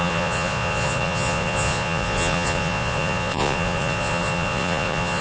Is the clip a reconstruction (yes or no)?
yes